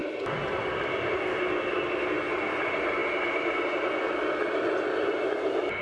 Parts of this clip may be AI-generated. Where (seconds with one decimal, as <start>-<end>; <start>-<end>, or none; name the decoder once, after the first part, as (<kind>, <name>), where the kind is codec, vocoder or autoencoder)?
none